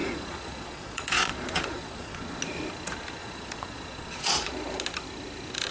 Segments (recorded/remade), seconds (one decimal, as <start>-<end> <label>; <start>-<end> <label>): 0.0-2.4 remade; 2.4-3.2 recorded; 3.2-4.5 remade; 4.5-5.7 recorded